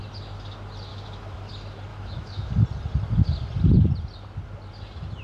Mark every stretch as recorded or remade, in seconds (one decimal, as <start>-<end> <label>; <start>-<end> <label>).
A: 0.0-0.9 recorded; 0.9-1.5 remade; 1.5-1.9 recorded; 1.9-2.5 remade; 2.5-5.2 recorded